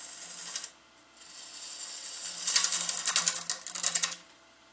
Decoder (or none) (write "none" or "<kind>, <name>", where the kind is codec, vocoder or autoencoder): none